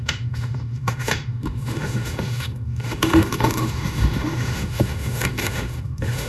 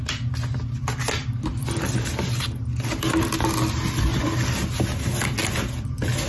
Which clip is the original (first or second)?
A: second